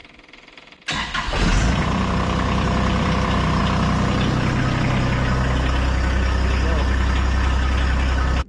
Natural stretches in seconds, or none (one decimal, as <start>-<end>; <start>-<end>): 3.6-8.5